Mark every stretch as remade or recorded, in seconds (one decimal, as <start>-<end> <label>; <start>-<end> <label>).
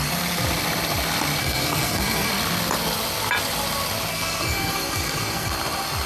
0.0-1.4 recorded; 1.4-2.3 remade; 2.3-4.1 recorded; 4.1-5.5 remade; 5.5-6.1 recorded